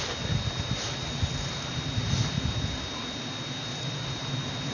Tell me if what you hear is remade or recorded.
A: recorded